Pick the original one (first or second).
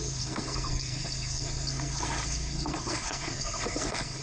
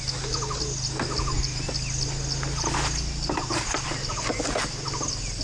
second